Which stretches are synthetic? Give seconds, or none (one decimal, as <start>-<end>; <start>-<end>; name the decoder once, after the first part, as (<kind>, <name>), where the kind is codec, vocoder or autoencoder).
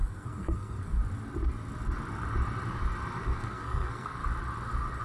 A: 0.0-1.0 (codec, SNAC); 3.2-4.2